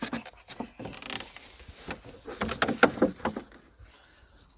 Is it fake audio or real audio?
real